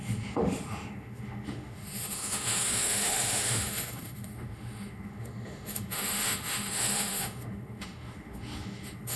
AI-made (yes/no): yes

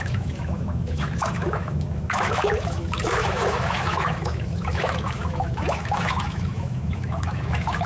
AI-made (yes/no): yes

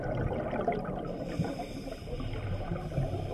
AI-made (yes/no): no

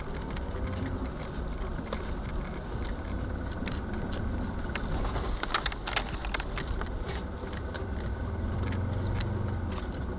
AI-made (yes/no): no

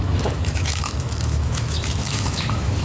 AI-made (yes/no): yes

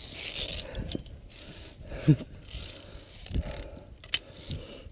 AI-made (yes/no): no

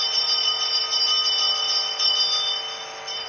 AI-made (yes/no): no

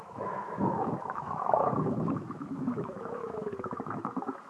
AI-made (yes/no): yes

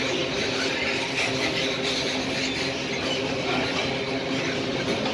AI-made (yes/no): no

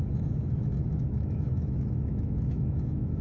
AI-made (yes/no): yes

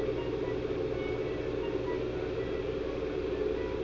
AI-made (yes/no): no